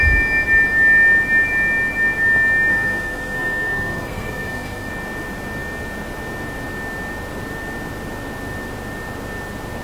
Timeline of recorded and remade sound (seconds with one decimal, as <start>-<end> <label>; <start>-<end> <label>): 0.0-2.7 recorded; 2.7-4.9 remade; 4.9-9.8 recorded